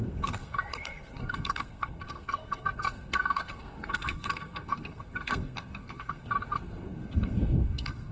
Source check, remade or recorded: remade